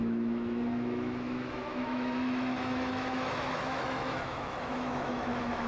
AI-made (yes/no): yes